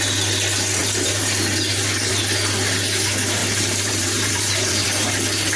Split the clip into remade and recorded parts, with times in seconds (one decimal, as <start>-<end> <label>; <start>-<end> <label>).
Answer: 0.0-0.8 recorded; 0.8-2.1 remade; 2.1-3.4 recorded; 3.4-5.1 remade; 5.1-5.6 recorded